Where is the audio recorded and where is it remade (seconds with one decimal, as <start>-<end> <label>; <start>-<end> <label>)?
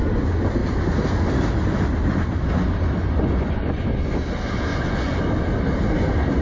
0.0-3.0 recorded; 3.0-4.1 remade; 4.1-4.7 recorded; 4.7-5.2 remade; 5.2-6.4 recorded